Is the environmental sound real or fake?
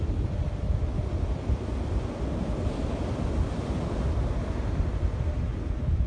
real